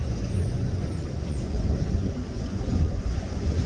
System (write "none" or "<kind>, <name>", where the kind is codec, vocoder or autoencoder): vocoder, Vocos